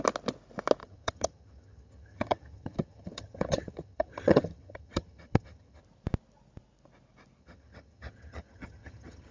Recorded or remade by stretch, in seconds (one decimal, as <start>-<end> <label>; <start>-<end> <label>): 0.0-0.8 recorded; 0.8-5.8 remade; 5.8-7.4 recorded; 7.4-9.3 remade